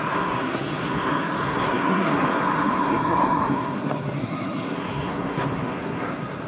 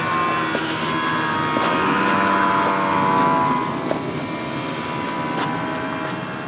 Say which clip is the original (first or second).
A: second